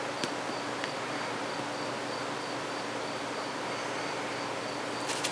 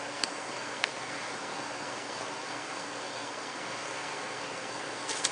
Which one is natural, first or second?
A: first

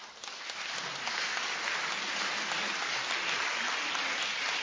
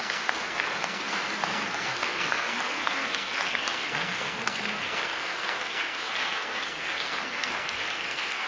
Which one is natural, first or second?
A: first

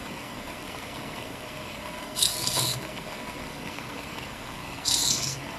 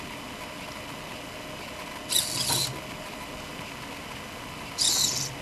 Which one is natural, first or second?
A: second